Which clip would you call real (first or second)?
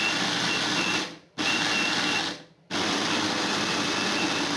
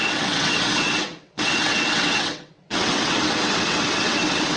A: first